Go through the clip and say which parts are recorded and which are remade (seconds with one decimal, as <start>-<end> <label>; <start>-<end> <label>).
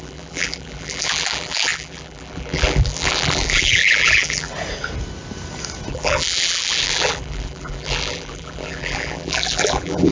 0.0-4.5 remade; 4.5-5.9 recorded; 5.9-10.1 remade